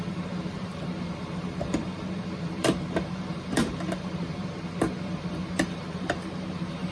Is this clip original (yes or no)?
no